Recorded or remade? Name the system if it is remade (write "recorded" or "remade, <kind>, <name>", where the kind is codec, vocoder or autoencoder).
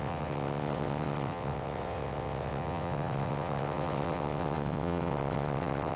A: remade, vocoder, WaveNeXt